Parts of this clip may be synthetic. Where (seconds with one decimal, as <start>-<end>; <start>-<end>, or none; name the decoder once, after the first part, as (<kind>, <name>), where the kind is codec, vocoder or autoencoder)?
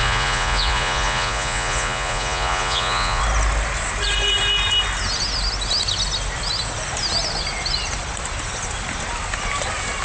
0.0-3.2 (vocoder, Vocos)